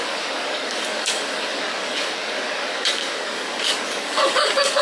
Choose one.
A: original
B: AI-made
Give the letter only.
B